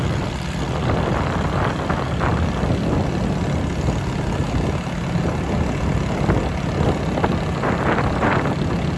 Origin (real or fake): real